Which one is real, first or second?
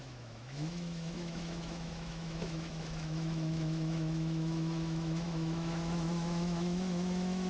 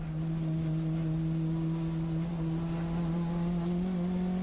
second